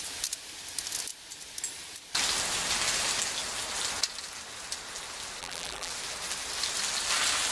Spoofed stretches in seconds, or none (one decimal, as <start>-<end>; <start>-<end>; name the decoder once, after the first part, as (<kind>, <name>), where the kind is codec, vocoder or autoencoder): 5.4-5.9 (vocoder, BigVGAN v2)